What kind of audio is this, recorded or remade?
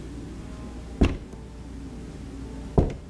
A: recorded